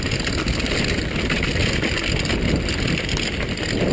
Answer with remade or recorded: recorded